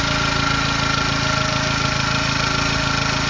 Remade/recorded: recorded